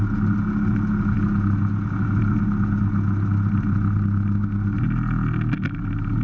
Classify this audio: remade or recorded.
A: recorded